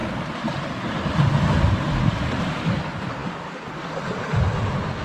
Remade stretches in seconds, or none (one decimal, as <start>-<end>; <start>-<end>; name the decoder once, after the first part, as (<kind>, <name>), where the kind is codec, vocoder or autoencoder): none